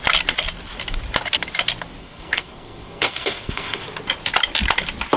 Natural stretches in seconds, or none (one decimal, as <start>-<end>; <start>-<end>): 0.0-2.0; 3.8-5.2